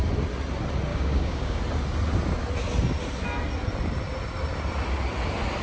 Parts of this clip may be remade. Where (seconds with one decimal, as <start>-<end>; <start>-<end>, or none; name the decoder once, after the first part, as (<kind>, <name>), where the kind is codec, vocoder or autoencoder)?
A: 0.9-1.6 (codec, DAC)